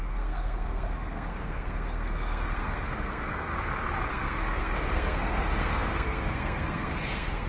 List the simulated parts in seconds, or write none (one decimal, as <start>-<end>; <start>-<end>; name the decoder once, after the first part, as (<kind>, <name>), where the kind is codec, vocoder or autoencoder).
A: 0.0-3.5 (codec, SNAC); 4.1-7.5